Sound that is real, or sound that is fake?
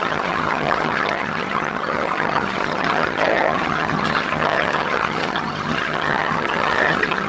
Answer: fake